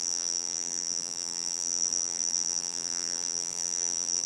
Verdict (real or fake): fake